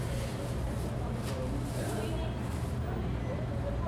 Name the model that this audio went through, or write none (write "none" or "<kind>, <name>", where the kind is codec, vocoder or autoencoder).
none